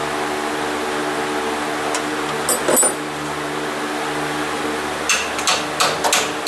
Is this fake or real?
real